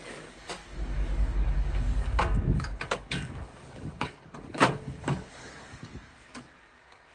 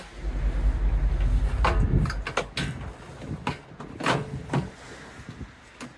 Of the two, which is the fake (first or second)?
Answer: first